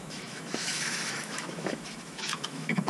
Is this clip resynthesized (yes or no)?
yes